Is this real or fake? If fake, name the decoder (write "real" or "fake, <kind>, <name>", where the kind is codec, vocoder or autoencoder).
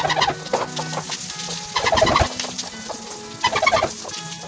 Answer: real